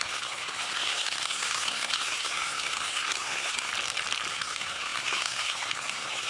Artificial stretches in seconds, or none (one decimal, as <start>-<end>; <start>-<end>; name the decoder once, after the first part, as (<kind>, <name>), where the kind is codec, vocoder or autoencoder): 0.0-3.7 (codec, SNAC); 4.3-6.3

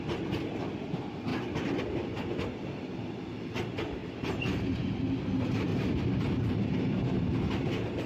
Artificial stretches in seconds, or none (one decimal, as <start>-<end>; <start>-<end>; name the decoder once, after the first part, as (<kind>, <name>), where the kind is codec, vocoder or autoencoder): 4.0-4.6 (vocoder, BigVGAN v2); 5.7-7.3

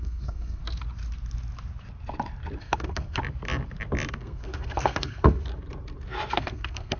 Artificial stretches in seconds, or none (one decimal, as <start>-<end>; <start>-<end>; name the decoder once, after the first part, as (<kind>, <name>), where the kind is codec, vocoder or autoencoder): 0.0-0.6 (codec, SNAC); 2.6-3.2; 4.1-5.5; 6.3-7.0

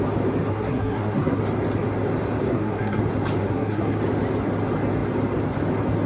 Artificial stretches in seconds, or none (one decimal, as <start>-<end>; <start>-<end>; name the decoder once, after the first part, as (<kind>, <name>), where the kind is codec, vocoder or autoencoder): 0.5-1.4 (codec, SNAC); 2.5-3.0; 3.4-4.0

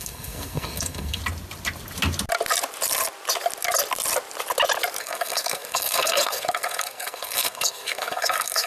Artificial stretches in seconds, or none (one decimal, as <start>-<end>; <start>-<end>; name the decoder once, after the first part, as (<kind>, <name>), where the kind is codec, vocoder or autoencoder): 0.0-1.2 (codec, SNAC); 5.0-8.7

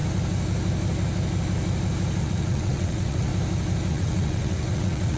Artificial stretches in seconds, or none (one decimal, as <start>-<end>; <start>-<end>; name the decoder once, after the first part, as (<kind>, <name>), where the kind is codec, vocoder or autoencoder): 2.2-3.3 (vocoder, WaveNeXt); 3.9-5.2

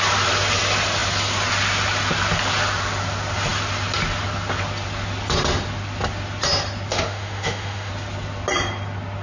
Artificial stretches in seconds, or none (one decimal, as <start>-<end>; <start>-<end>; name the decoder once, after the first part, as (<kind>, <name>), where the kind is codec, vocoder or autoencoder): 6.9-7.9 (autoencoder, DAC-VAE)

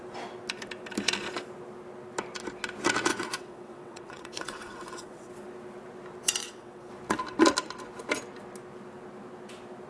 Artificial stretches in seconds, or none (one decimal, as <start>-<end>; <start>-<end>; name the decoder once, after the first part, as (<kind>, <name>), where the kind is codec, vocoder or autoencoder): 3.1-5.3 (vocoder, WaveNeXt); 6.4-6.9